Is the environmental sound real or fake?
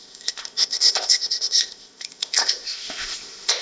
fake